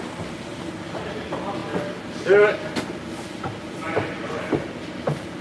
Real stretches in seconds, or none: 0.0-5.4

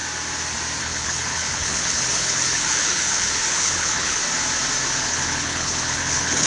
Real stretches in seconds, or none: 0.0-0.8; 4.2-5.0

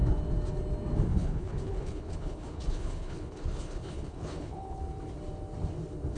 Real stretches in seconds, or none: 0.0-1.1; 4.8-6.2

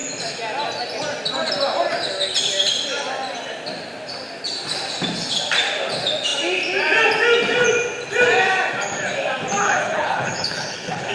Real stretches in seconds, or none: 0.0-9.6

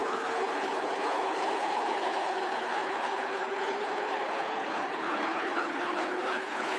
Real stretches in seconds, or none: none

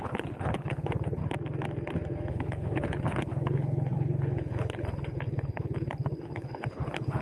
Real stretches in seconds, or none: 1.2-2.3